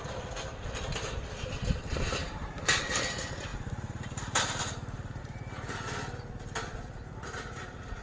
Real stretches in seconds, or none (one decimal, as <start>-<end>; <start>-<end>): 0.0-2.2; 2.8-3.5; 5.2-8.0